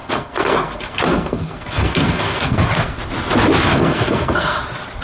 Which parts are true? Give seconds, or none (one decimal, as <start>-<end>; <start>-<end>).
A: 3.0-3.7; 4.6-5.0